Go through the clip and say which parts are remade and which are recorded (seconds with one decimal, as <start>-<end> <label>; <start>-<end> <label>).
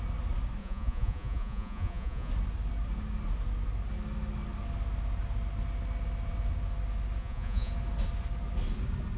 0.0-0.6 recorded; 0.6-2.3 remade; 2.3-7.2 recorded; 7.2-7.7 remade; 7.7-9.2 recorded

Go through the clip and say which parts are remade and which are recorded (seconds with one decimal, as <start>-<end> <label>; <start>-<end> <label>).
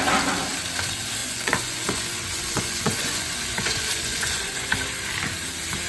0.0-1.2 recorded; 1.2-4.7 remade; 4.7-5.9 recorded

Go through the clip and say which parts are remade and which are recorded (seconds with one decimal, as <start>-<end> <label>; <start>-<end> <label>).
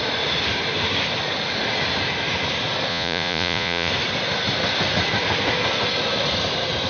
0.0-2.9 recorded; 2.9-3.9 remade; 3.9-6.9 recorded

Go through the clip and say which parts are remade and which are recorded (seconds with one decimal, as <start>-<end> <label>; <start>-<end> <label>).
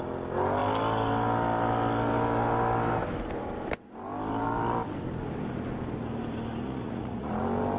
0.0-6.6 recorded; 6.6-7.3 remade; 7.3-7.8 recorded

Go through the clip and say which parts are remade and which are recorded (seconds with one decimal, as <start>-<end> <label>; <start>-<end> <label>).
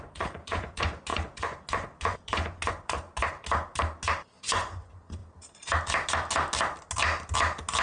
0.0-3.2 remade; 3.2-4.5 recorded; 4.5-5.2 remade; 5.2-7.8 recorded